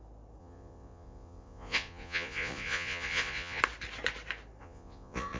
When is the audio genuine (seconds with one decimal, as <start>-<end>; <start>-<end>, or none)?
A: 0.0-0.4; 3.6-4.6